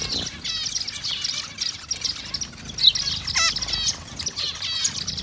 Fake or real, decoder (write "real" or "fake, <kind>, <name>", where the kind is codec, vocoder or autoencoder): real